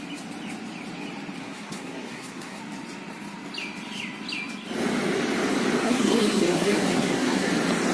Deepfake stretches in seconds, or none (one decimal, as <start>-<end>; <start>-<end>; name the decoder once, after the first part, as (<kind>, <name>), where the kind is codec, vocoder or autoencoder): 1.4-2.6 (codec, SNAC); 5.8-7.5